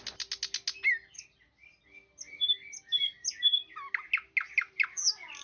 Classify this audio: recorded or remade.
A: recorded